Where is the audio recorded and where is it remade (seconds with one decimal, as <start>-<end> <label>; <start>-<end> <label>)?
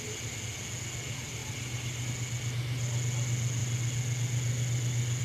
0.0-5.2 recorded